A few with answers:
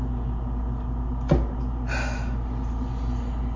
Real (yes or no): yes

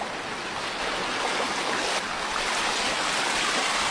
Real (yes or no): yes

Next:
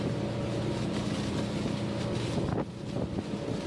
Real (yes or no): yes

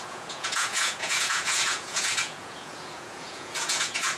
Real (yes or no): no